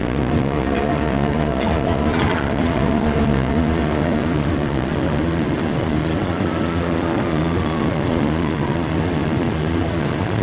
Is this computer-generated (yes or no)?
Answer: yes